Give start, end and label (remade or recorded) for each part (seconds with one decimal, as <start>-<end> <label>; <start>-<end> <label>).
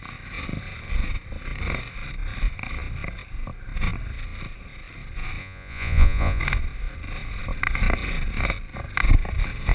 0.0-5.4 recorded; 5.4-6.4 remade; 6.4-9.7 recorded